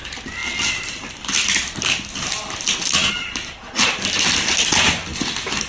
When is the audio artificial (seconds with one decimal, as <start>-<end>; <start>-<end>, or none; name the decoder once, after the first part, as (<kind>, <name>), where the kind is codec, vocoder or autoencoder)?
none